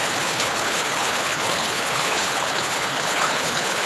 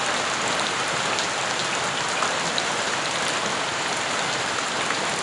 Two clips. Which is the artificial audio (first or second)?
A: first